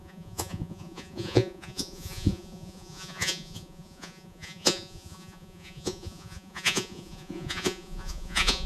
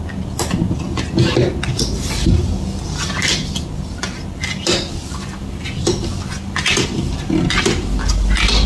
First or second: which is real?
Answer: second